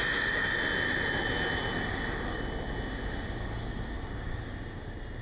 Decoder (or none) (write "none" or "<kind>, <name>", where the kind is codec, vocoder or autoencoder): none